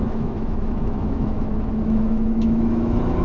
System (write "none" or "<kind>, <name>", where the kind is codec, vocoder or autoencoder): autoencoder, DAC-VAE